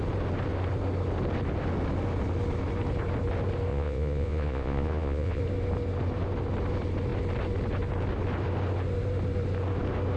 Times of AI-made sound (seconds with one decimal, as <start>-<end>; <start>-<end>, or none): 3.7-5.4